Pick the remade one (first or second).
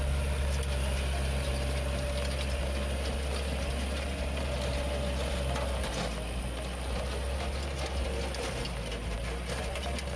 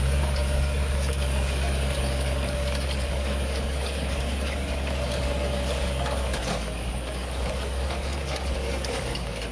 second